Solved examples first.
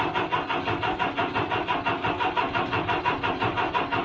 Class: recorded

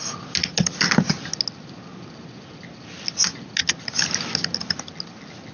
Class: recorded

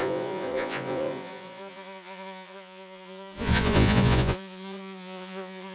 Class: remade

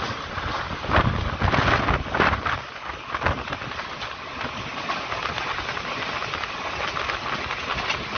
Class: recorded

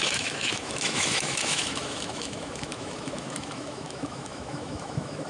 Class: remade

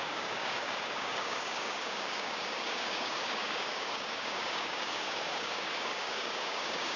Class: remade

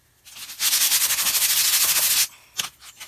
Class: recorded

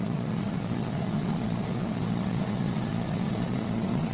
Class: remade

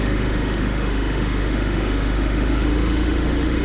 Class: remade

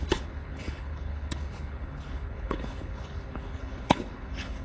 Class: remade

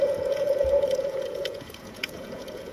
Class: remade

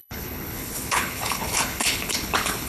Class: remade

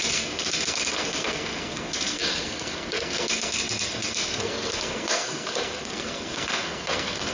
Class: remade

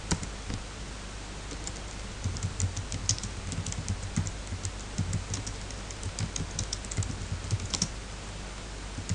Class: recorded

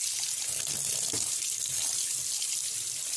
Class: recorded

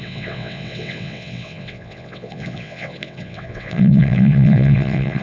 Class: remade